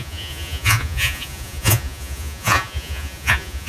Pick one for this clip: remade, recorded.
remade